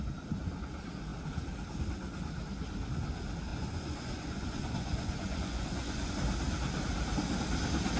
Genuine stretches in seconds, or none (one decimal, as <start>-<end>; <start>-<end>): 0.0-3.5; 6.1-8.0